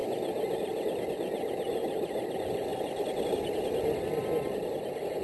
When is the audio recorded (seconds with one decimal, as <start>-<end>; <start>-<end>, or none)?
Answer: 0.0-5.2